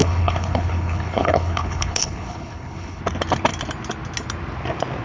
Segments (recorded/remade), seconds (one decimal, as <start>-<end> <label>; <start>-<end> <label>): 0.0-3.0 remade; 3.0-5.0 recorded